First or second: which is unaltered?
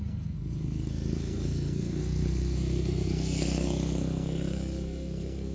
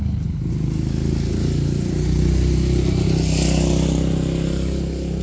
second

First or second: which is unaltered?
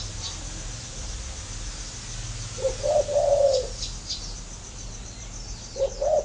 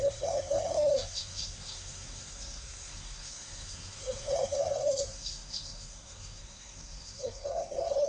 first